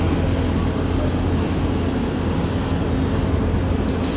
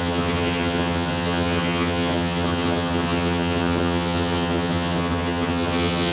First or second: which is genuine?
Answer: first